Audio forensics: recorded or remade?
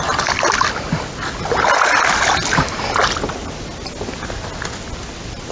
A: recorded